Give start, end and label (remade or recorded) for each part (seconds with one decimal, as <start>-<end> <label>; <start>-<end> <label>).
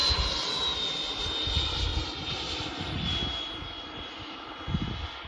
0.0-5.3 recorded